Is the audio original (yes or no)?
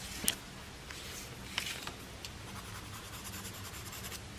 yes